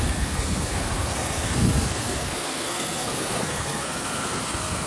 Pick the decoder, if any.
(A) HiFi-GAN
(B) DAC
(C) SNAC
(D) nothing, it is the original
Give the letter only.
C